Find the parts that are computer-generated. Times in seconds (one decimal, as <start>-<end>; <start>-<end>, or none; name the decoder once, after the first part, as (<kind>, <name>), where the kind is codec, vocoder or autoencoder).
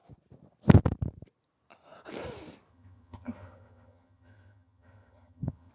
2.7-5.7 (vocoder, HiFi-GAN)